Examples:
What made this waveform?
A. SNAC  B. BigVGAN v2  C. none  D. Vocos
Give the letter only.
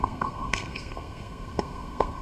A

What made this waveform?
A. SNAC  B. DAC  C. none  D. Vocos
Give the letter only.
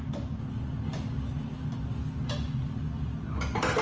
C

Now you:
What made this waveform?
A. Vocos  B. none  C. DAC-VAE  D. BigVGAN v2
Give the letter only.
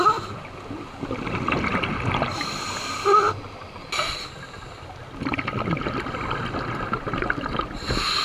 B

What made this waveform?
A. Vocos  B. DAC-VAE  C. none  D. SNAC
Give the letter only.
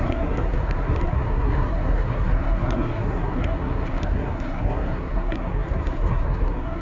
D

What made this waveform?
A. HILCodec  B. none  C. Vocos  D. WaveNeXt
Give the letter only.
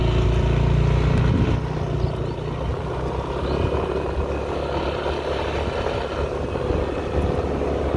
B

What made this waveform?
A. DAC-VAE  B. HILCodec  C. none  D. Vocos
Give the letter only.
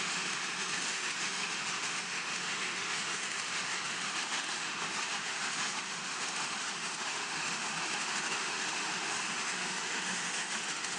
A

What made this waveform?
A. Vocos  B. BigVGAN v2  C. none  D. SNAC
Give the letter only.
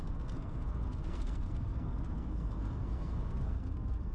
D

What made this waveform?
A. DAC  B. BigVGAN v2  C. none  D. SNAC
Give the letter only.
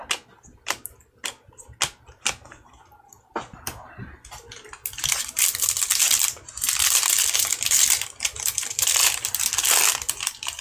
C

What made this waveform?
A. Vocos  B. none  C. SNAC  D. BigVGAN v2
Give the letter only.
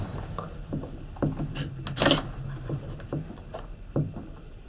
B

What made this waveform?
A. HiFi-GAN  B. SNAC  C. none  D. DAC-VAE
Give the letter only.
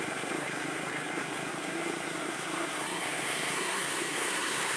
B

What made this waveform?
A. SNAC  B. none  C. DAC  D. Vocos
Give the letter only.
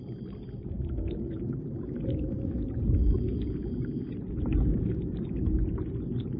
B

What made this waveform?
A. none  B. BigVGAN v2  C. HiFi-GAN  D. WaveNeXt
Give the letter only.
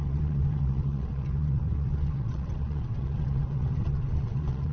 D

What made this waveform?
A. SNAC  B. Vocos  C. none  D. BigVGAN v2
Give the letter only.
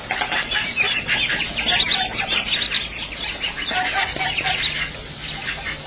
C